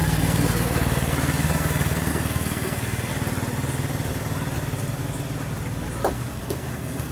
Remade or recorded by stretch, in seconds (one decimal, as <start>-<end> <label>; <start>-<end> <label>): 0.0-3.1 remade; 3.1-6.1 recorded; 6.1-7.1 remade